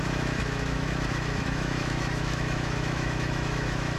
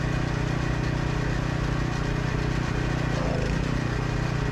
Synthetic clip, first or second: first